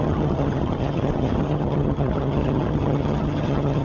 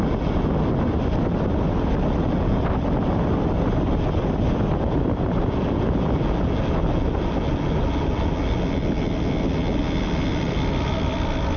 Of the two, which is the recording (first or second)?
second